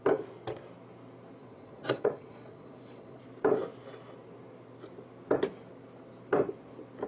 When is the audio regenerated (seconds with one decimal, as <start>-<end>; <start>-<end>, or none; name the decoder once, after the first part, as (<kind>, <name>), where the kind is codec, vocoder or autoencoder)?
1.4-3.2 (vocoder, Vocos)